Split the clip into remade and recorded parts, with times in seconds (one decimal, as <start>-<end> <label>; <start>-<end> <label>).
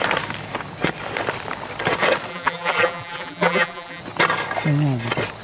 0.0-2.3 recorded; 2.3-4.0 remade; 4.0-5.4 recorded